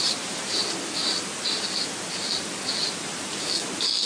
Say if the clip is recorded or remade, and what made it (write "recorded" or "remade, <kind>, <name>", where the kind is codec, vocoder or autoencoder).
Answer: recorded